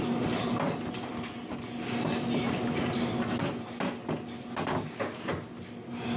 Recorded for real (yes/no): yes